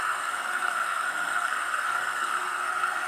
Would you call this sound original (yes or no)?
no